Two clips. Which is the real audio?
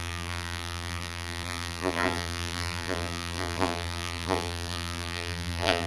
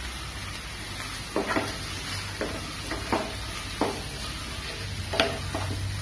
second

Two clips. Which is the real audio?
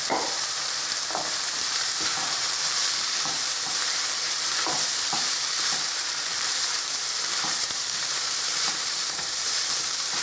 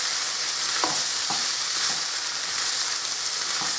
second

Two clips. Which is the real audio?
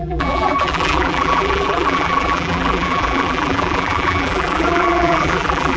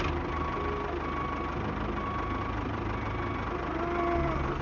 second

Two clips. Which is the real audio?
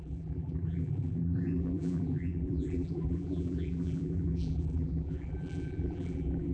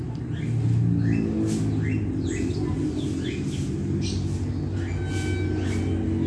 second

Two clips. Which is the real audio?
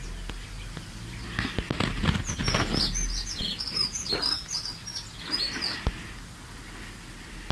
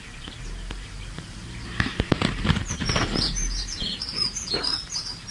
first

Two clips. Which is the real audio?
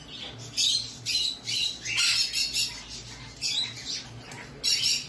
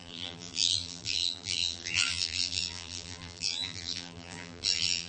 first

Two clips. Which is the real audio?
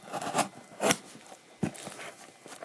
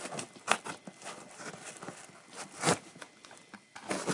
first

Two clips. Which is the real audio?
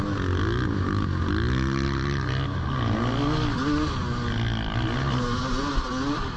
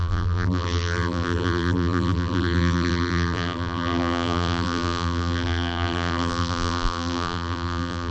first